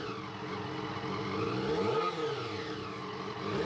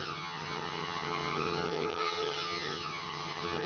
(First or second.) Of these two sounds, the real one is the first